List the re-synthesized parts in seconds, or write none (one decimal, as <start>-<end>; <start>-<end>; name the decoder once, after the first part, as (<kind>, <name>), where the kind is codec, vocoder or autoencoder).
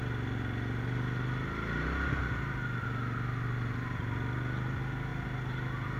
none